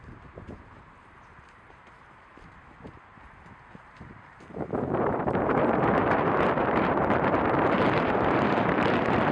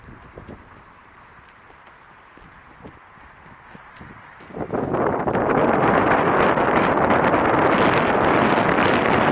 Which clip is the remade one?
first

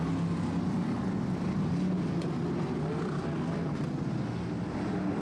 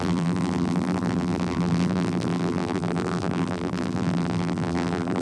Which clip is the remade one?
second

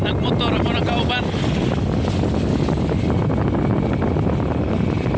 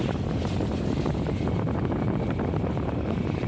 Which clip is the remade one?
second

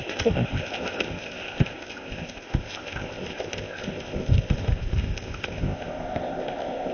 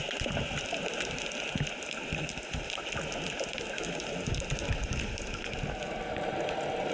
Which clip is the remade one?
first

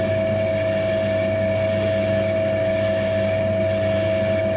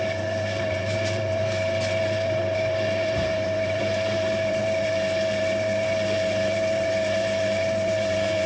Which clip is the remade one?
second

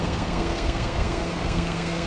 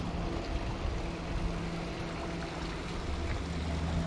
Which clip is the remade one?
first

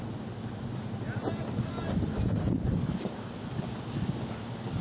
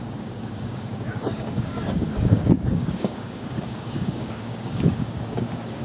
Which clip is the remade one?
second